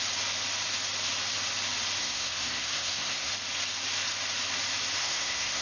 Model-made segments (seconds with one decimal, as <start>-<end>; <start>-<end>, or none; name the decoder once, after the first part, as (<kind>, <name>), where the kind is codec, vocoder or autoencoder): 2.0-3.3 (codec, SNAC); 5.0-5.6